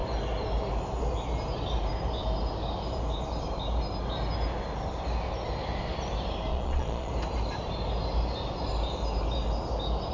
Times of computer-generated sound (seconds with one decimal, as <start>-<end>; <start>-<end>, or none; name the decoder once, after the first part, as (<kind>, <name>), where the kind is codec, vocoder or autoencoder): 6.5-7.1 (vocoder, Vocos)